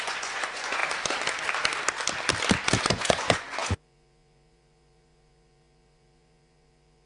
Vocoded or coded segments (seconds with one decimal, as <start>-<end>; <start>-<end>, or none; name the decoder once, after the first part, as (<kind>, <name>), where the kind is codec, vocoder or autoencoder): 0.0-0.8 (vocoder, Vocos); 2.8-7.1